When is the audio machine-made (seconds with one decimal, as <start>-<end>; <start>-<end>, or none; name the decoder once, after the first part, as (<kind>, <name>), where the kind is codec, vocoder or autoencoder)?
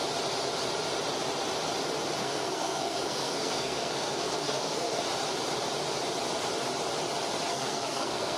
2.2-5.0 (codec, SNAC); 7.5-8.4